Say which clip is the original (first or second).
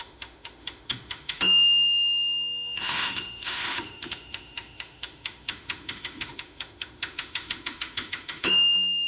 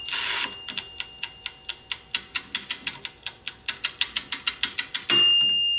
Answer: second